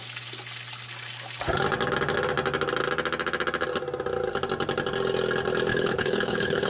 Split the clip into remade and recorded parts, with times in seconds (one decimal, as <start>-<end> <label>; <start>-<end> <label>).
0.0-5.7 recorded; 5.7-6.7 remade